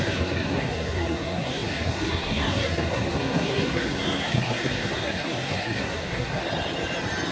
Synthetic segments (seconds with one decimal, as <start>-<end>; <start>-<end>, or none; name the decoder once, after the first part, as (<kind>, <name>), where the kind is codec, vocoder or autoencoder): 0.0-6.4 (codec, SNAC)